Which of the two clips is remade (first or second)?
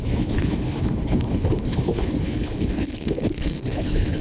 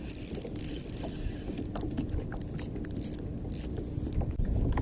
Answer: first